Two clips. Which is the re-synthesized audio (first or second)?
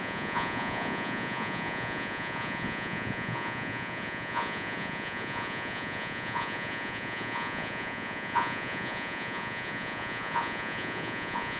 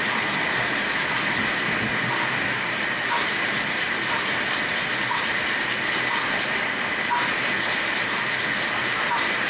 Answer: first